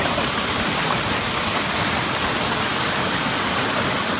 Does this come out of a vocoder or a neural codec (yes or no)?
no